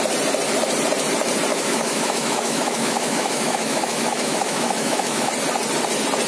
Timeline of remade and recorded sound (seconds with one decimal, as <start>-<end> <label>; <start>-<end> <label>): 0.0-1.5 recorded; 1.5-5.3 remade; 5.3-6.3 recorded